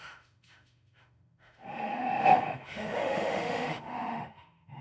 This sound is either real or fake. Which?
fake